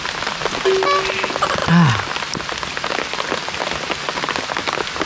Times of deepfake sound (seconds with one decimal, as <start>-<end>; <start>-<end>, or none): none